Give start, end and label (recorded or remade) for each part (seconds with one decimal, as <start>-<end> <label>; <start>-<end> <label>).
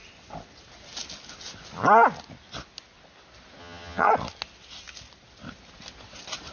0.0-3.6 recorded; 3.6-4.1 remade; 4.1-6.5 recorded